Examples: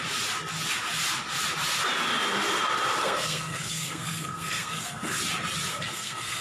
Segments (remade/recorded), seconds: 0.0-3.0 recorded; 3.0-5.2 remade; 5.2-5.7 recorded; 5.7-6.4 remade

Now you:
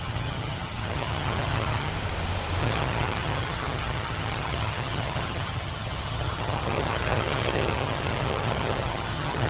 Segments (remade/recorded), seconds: 0.0-1.9 remade; 1.9-2.6 recorded; 2.6-9.5 remade

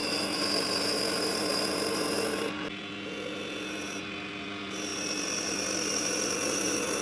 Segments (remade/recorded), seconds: 0.0-7.0 recorded

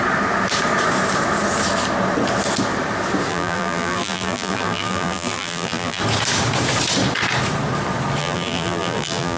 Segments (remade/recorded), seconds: 0.0-3.3 recorded; 3.3-6.0 remade; 6.0-8.2 recorded; 8.2-9.4 remade